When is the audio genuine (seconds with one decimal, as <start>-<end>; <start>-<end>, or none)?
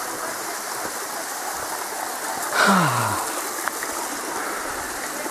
0.0-5.3